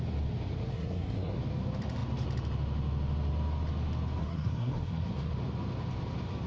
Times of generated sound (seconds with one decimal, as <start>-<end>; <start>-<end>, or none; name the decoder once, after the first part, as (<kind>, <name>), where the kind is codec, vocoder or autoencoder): 0.7-1.4 (codec, SNAC); 4.2-5.3